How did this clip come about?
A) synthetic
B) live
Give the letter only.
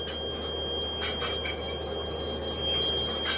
B